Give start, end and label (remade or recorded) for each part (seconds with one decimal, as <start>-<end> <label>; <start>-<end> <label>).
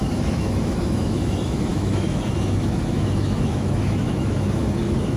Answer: 0.0-5.2 remade